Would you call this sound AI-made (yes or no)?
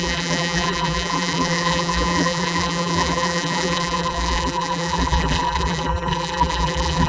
yes